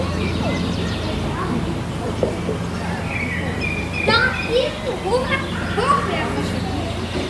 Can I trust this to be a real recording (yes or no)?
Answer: no